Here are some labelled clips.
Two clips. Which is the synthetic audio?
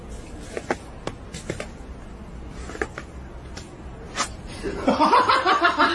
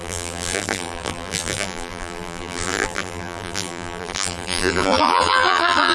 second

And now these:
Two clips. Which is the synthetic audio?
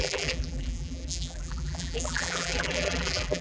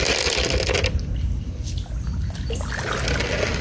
first